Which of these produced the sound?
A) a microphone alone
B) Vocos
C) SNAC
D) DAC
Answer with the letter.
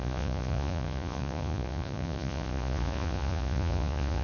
B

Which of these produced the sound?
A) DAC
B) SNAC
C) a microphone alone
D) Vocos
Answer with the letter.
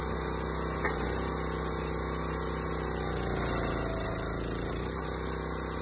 C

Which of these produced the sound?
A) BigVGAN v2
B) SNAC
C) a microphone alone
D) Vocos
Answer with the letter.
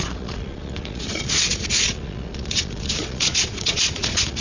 D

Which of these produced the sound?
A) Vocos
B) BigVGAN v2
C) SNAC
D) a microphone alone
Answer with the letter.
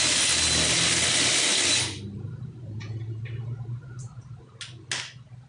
D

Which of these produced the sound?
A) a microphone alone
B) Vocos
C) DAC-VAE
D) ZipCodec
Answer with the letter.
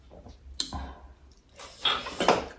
A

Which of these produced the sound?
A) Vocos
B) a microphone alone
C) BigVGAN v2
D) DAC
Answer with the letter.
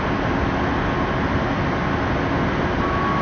B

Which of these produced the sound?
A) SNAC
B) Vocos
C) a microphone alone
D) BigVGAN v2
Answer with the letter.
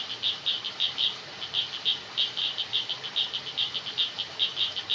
C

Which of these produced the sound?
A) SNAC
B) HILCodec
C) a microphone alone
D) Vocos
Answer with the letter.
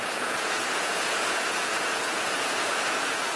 D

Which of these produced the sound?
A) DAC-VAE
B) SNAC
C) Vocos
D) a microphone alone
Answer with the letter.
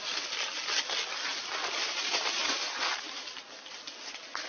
D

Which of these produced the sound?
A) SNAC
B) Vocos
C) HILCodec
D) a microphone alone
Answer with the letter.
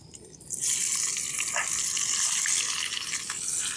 D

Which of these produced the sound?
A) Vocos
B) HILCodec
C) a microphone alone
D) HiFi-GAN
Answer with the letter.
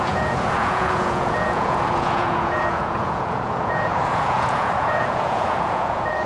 A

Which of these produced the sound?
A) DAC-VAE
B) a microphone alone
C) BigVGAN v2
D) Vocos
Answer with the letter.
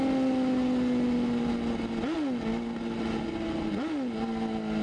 B